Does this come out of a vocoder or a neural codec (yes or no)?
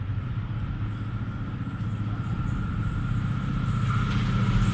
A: no